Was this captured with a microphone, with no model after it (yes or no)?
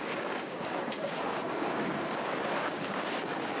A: no